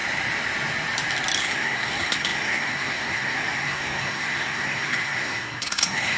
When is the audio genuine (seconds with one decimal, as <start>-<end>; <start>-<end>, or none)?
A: 0.0-1.4